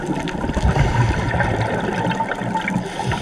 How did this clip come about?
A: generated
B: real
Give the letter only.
B